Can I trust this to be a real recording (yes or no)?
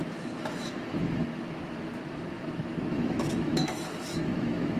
no